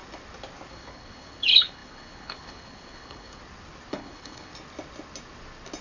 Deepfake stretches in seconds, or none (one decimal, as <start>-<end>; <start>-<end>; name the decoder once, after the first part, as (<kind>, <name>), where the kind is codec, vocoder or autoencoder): 0.7-3.4 (codec, HILCodec); 3.9-4.5